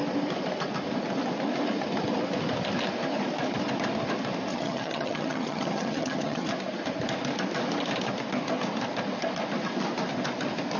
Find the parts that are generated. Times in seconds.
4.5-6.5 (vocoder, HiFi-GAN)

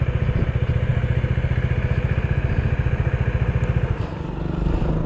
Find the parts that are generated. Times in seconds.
none